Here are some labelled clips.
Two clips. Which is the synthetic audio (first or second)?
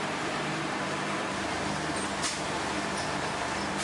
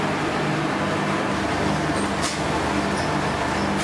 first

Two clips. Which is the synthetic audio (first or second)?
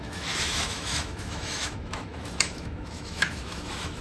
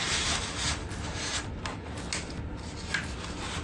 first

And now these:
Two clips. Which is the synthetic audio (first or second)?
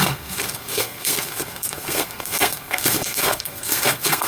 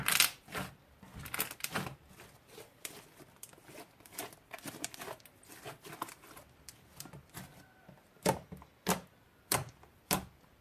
first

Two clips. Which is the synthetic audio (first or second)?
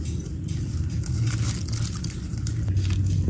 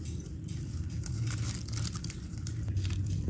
second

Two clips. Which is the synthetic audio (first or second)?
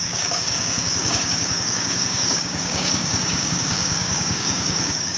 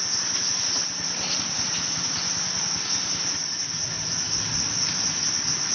first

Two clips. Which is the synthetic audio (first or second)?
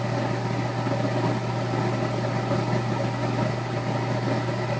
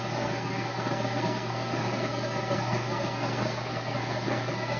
second